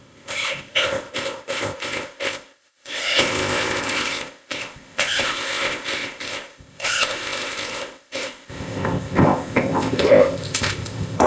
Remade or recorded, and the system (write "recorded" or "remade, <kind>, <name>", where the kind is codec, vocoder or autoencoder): remade, codec, ZipCodec